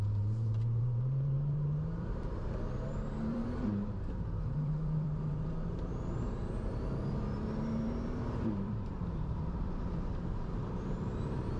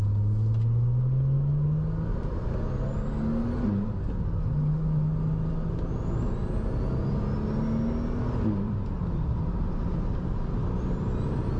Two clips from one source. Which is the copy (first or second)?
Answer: first